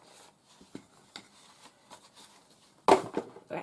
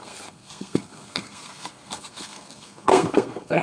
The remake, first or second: second